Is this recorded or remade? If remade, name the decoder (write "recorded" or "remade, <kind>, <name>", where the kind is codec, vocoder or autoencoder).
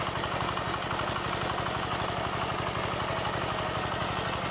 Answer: recorded